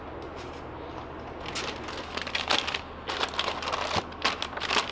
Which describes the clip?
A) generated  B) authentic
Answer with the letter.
B